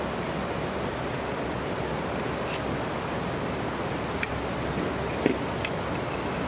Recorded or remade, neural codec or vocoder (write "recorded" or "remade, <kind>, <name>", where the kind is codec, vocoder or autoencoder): recorded